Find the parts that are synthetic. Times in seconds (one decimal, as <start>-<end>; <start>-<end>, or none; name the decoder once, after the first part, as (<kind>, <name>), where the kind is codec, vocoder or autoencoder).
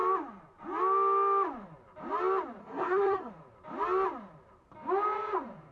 2.6-3.3 (codec, SNAC)